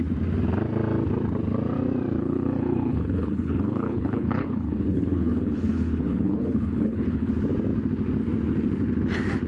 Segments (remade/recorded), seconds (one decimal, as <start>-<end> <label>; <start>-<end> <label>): 0.0-2.2 recorded; 2.2-7.3 remade; 7.3-9.5 recorded